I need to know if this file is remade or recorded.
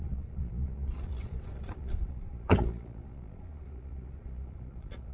remade